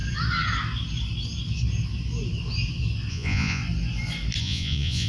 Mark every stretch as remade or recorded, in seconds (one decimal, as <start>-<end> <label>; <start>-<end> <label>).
0.0-3.1 recorded; 3.1-3.6 remade; 3.6-4.4 recorded; 4.4-5.1 remade